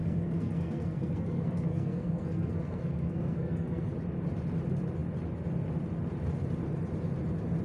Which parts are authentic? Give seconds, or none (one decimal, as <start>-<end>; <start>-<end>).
3.9-7.6